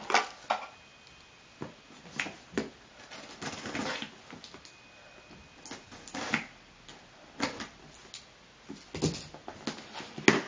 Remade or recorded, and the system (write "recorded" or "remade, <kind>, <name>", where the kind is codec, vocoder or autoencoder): recorded